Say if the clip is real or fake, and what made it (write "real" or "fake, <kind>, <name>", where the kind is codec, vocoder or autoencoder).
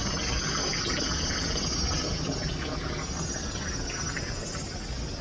real